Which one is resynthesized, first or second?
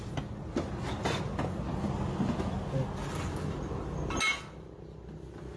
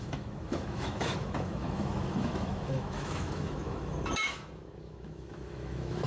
second